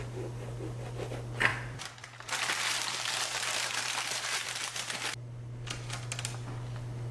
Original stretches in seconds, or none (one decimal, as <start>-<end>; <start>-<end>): 0.0-1.5; 4.6-7.1